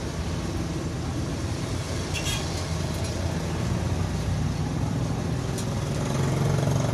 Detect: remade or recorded recorded